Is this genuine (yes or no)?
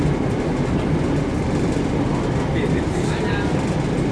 yes